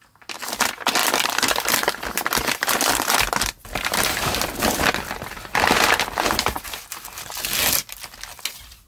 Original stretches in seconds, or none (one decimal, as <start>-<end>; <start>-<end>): 0.0-1.0; 5.3-8.9